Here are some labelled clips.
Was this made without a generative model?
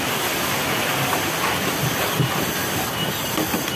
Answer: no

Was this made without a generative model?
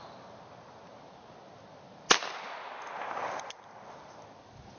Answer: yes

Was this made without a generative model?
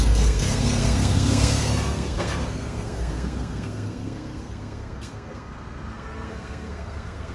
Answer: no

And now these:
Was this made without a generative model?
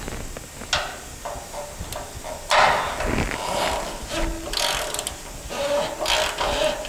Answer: yes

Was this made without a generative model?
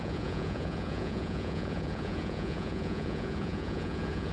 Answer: no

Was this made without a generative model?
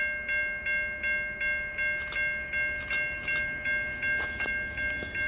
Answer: yes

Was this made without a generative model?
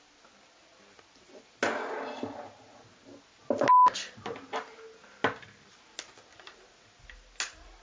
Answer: yes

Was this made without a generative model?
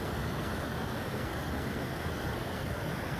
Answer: no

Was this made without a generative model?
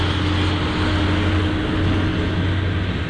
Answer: yes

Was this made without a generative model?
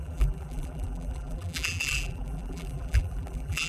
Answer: no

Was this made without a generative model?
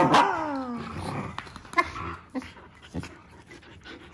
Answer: yes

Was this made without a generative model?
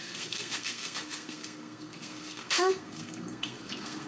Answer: no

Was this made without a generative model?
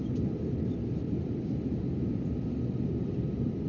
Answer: yes